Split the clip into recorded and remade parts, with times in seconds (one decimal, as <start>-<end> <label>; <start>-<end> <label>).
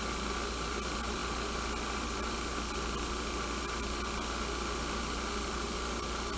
0.0-6.4 recorded